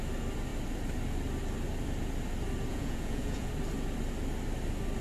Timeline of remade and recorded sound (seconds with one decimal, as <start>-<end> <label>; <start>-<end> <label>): 0.0-2.7 recorded; 2.7-3.5 remade; 3.5-5.0 recorded

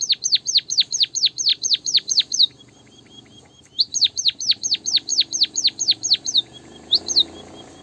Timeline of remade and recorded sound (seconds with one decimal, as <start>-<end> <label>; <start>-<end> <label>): 0.0-1.5 recorded; 1.5-3.8 remade; 3.8-7.8 recorded

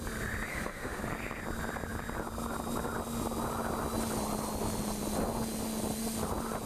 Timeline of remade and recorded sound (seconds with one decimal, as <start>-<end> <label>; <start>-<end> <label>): 0.0-0.5 recorded; 0.5-1.0 remade; 1.0-6.7 recorded

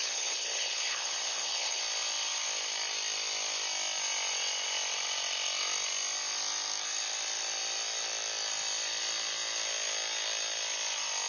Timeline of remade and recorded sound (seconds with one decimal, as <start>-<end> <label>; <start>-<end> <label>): 0.0-1.8 remade; 1.8-11.3 recorded

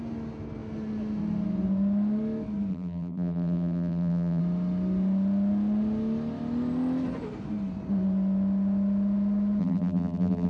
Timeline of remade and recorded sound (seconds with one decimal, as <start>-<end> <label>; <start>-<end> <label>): 0.0-2.7 recorded; 2.7-4.4 remade; 4.4-9.6 recorded; 9.6-10.5 remade

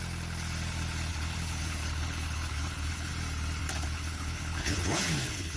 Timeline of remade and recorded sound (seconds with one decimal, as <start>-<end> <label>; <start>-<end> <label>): 0.0-1.1 recorded; 1.1-3.1 remade; 3.1-3.6 recorded; 3.6-5.6 remade

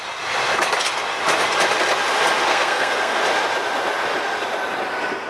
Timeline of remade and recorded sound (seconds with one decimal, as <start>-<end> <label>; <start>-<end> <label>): 0.0-2.5 recorded; 2.5-3.2 remade; 3.2-5.3 recorded

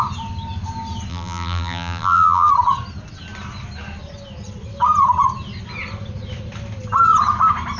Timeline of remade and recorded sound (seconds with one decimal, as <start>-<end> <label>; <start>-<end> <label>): 0.0-1.1 recorded; 1.1-2.5 remade; 2.5-7.8 recorded